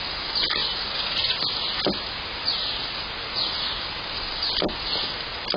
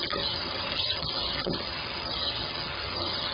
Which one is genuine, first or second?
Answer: first